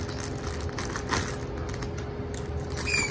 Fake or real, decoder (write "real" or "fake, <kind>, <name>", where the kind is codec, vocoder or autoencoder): real